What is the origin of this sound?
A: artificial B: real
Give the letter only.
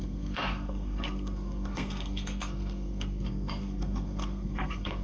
A